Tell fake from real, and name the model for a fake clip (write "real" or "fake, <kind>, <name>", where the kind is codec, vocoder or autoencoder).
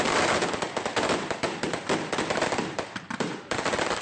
fake, vocoder, BigVGAN v2